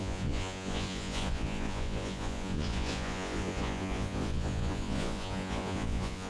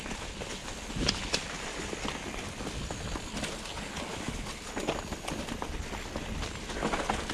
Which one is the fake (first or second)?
first